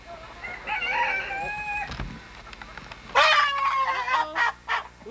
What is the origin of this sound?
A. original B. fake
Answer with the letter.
A